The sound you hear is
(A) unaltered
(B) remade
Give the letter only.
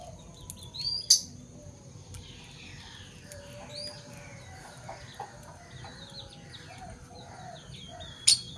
A